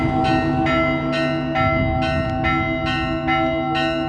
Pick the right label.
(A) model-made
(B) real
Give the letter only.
B